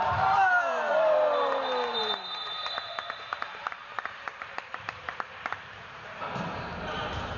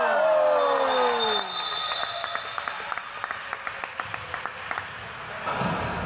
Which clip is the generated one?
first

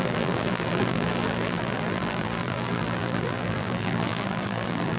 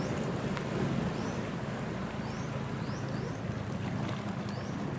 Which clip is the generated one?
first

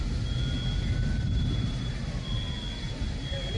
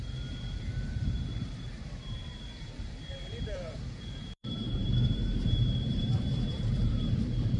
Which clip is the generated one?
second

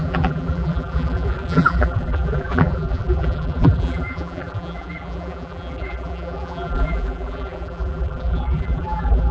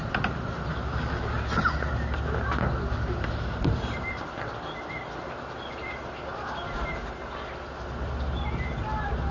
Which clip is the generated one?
first